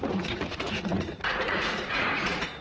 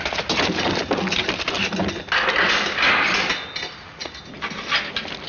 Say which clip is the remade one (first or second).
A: first